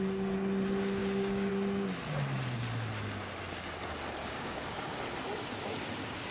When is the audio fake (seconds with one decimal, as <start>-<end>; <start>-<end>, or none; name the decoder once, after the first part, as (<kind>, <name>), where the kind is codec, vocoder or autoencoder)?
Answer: 1.0-1.5 (codec, DAC); 4.2-5.0